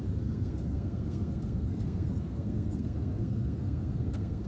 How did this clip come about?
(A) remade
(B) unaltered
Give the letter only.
A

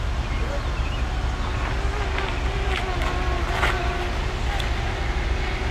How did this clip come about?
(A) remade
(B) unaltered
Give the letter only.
B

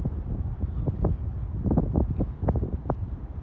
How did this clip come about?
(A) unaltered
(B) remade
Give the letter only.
A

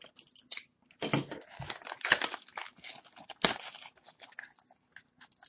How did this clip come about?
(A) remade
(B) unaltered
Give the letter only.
B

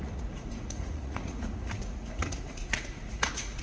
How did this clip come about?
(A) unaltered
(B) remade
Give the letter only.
B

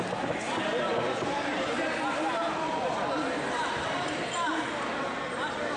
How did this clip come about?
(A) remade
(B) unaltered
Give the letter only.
B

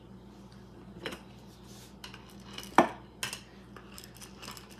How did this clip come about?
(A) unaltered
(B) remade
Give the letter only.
A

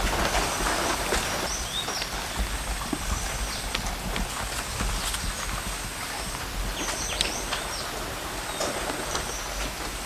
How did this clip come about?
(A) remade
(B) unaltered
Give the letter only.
B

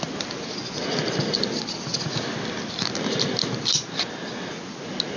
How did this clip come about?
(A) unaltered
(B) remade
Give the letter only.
A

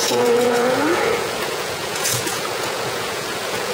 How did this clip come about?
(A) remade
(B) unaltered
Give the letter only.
A